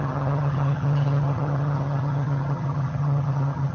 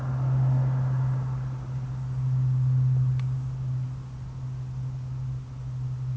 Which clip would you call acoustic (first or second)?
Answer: second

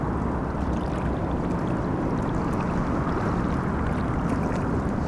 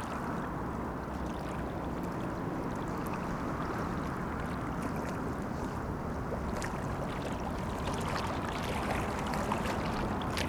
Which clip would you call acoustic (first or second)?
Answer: second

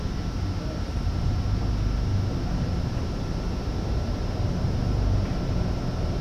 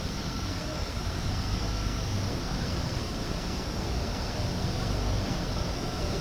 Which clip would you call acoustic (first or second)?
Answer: first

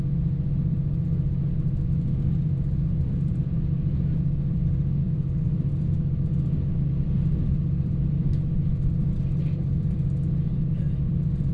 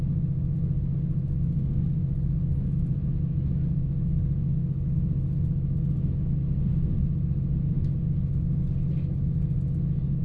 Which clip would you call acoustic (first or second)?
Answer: second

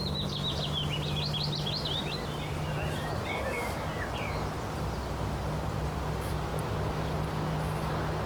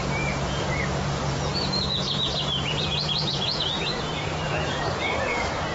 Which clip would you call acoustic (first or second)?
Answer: first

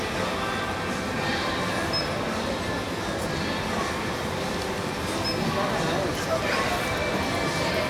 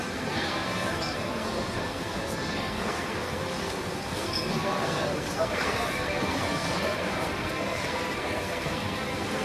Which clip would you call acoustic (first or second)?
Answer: first